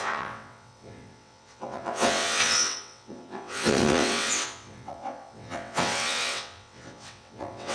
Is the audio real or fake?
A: fake